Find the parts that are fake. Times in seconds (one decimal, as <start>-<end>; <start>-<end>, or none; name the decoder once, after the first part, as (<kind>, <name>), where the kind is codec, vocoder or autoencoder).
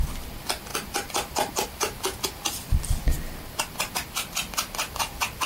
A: none